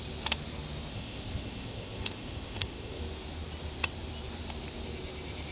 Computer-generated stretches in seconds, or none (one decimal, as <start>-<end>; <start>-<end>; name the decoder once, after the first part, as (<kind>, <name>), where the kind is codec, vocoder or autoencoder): 0.9-3.0 (codec, ZipCodec)